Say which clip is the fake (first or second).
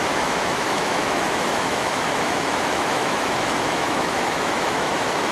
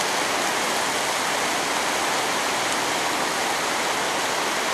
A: first